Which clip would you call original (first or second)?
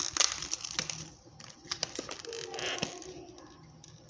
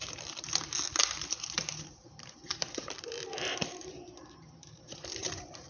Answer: first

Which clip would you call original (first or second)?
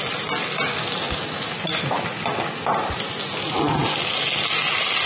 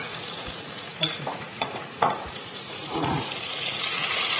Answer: first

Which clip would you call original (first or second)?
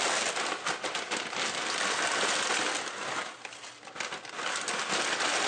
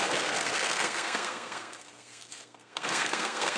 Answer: first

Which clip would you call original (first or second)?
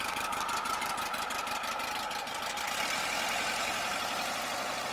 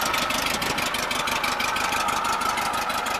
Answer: second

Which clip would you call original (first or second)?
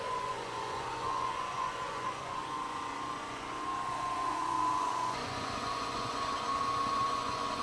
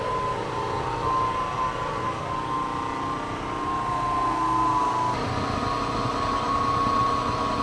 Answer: second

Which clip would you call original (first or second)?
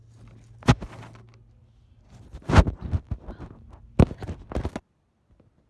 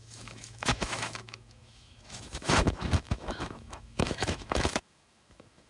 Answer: first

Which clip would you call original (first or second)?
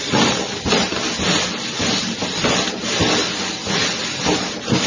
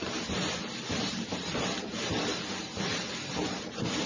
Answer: first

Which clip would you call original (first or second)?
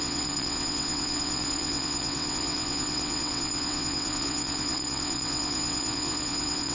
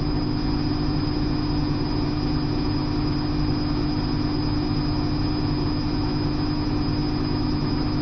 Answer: second